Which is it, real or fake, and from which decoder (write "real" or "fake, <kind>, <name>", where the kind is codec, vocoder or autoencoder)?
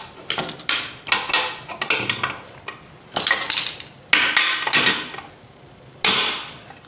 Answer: real